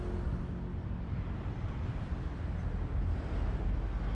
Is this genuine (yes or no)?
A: yes